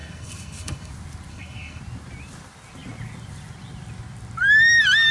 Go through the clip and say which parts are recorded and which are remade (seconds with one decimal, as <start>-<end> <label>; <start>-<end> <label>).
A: 0.0-0.9 remade; 0.9-1.3 recorded; 1.3-1.8 remade; 1.8-5.1 recorded